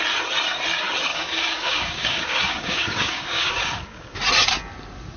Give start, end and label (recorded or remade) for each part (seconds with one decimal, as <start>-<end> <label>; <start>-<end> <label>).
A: 0.0-1.1 recorded; 1.1-4.2 remade; 4.2-5.2 recorded